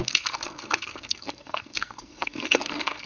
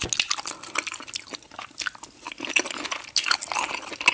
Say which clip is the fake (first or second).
first